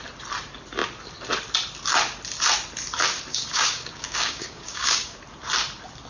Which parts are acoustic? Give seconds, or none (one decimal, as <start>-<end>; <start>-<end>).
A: 0.0-3.3; 5.2-6.1